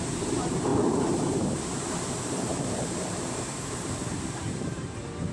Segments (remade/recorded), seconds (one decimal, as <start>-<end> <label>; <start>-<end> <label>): 0.0-5.3 remade